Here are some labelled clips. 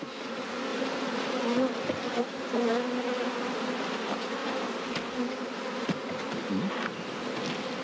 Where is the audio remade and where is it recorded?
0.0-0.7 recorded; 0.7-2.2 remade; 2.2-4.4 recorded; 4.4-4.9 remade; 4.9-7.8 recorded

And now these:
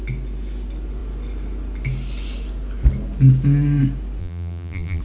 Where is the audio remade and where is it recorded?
0.0-4.2 recorded; 4.2-5.0 remade

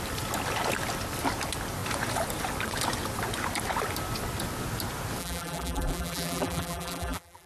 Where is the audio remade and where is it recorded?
0.0-5.2 recorded; 5.2-7.5 remade

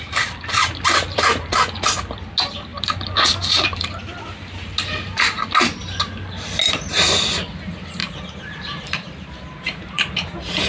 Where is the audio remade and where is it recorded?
0.0-2.7 recorded; 2.7-3.9 remade; 3.9-8.0 recorded; 8.0-10.7 remade

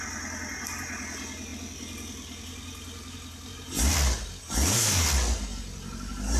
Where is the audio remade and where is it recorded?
0.0-6.4 recorded

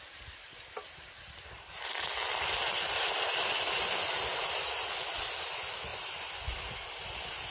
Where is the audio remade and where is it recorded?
0.0-7.5 recorded

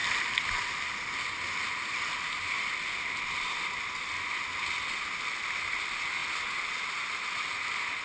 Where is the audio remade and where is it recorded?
0.0-8.0 recorded

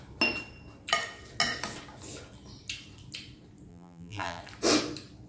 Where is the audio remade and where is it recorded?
0.0-3.7 recorded; 3.7-4.4 remade; 4.4-5.3 recorded